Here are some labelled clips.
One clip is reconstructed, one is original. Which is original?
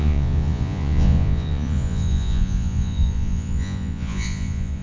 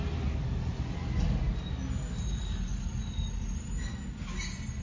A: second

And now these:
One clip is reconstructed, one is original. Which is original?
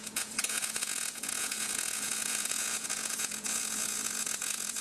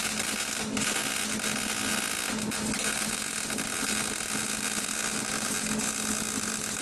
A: second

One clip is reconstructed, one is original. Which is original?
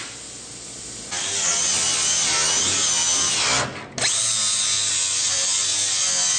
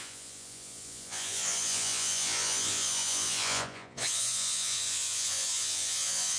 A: first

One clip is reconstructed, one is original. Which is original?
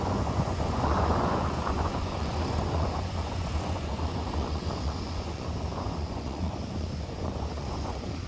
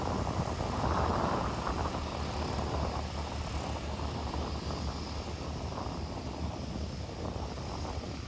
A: second